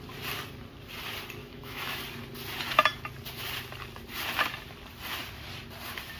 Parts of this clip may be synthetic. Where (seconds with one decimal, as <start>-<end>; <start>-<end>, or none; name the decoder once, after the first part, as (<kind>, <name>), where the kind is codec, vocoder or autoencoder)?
1.4-2.0 (autoencoder, DAC-VAE)